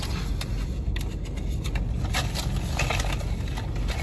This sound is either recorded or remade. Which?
recorded